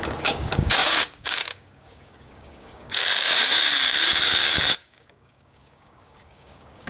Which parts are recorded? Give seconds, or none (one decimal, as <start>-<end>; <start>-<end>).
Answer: none